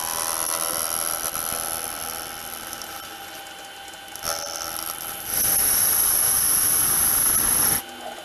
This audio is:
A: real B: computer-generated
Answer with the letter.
A